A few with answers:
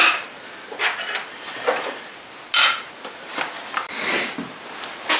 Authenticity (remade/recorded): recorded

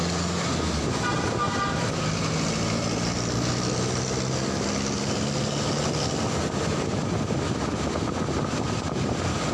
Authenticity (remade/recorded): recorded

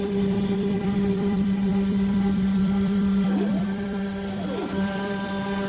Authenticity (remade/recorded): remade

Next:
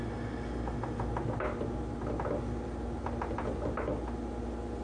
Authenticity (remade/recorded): recorded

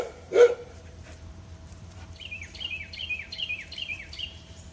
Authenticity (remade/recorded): remade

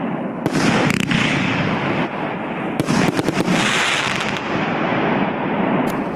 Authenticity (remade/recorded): recorded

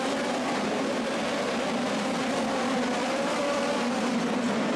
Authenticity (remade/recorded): remade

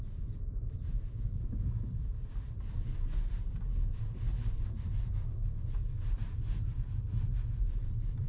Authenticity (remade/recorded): remade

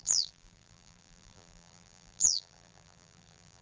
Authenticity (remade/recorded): remade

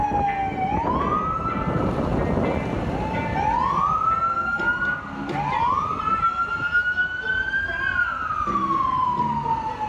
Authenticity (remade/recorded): recorded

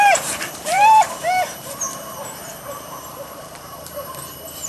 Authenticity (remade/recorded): remade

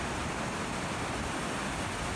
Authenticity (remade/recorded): recorded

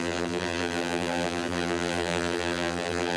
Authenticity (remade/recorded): remade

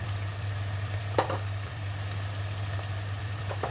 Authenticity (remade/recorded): remade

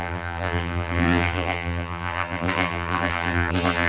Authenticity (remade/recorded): remade